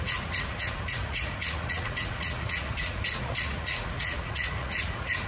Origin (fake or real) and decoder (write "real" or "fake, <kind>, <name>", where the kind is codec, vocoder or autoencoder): fake, vocoder, Vocos